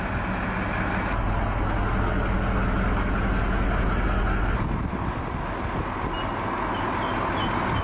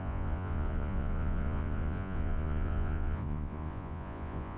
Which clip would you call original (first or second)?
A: first